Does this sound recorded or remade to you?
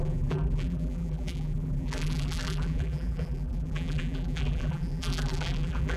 remade